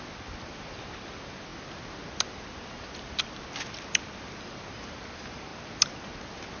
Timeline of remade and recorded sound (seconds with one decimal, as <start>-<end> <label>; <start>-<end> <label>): 0.0-6.6 recorded